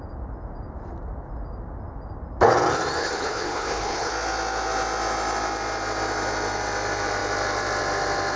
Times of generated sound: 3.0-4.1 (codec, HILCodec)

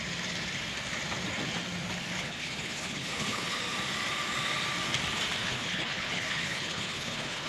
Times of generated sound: 2.1-3.6 (codec, HILCodec); 5.4-7.5

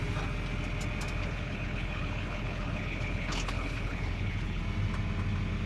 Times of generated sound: 1.2-4.6 (codec, HILCodec)

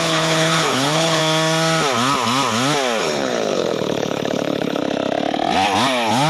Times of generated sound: 0.0-1.2 (codec, HILCodec); 3.0-4.8

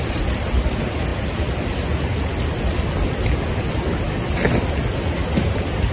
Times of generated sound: none